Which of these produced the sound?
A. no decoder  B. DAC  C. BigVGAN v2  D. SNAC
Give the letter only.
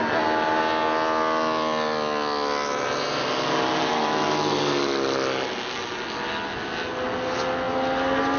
A